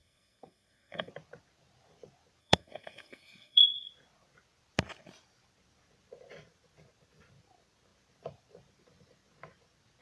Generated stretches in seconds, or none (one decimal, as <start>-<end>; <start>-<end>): 0.0-1.1; 2.4-3.9